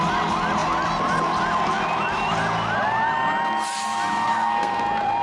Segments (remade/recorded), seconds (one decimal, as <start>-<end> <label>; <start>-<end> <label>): 0.0-4.3 recorded; 4.3-4.8 remade; 4.8-5.2 recorded